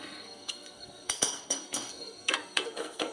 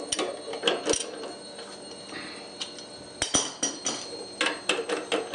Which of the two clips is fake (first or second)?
first